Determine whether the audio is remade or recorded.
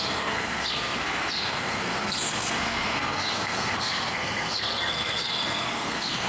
remade